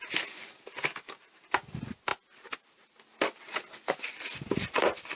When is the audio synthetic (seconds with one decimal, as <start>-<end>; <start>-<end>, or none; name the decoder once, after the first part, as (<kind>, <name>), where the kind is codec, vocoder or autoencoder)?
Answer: none